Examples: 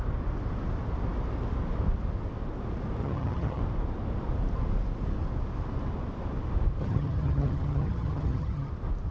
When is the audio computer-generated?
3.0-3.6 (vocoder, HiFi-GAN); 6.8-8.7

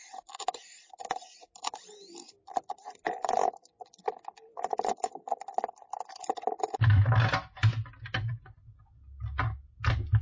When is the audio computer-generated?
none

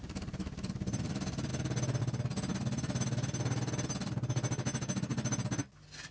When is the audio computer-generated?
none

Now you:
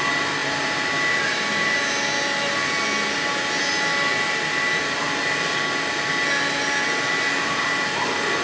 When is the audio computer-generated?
none

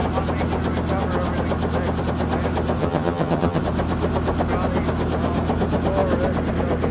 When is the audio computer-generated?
2.8-3.6 (vocoder, HiFi-GAN)